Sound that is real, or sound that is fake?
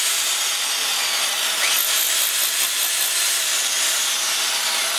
real